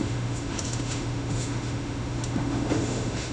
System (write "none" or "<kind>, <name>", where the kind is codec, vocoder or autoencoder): autoencoder, DAC-VAE